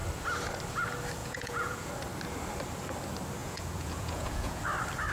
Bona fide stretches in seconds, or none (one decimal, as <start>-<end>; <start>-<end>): 0.0-1.2; 1.9-3.4; 4.6-5.1

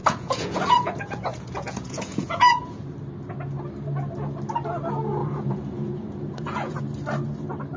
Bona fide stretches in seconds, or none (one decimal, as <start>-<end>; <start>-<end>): 2.8-5.2; 6.8-7.8